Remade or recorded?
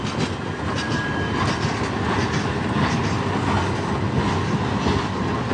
recorded